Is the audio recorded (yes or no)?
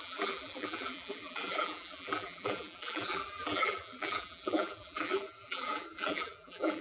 no